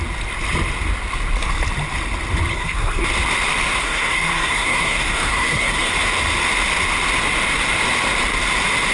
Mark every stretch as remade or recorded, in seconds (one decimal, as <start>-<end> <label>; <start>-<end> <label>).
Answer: 0.0-2.5 recorded; 2.5-3.0 remade; 3.0-3.8 recorded; 3.8-5.9 remade; 5.9-8.9 recorded